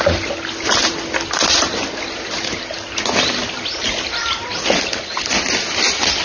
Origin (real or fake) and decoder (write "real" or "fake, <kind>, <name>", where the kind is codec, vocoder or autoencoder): real